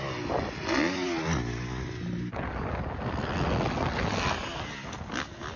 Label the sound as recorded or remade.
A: recorded